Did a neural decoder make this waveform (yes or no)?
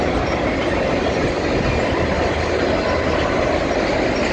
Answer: no